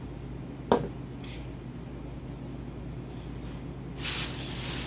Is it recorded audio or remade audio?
recorded